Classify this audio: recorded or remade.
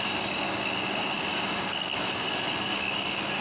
remade